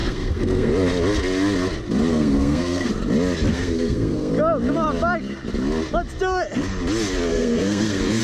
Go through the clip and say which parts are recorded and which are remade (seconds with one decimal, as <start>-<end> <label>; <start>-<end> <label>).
0.0-0.7 remade; 0.7-2.1 recorded; 2.1-2.9 remade; 2.9-3.5 recorded; 3.5-4.3 remade; 4.3-7.3 recorded; 7.3-8.2 remade